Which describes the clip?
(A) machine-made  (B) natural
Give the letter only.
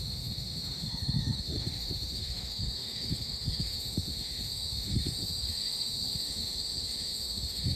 A